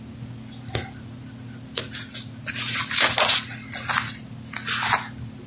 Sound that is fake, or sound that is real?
real